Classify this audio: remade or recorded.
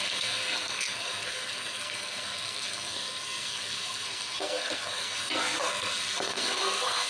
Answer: remade